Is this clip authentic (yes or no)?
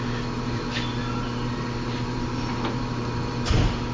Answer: yes